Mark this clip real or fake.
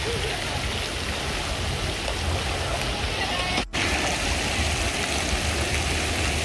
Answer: real